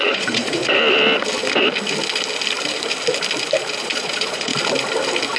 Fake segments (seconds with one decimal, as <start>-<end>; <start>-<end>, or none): 0.0-0.6; 3.8-4.5